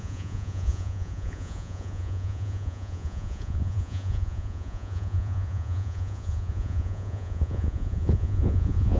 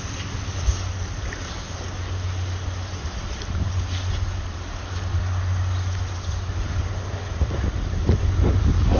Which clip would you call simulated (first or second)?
first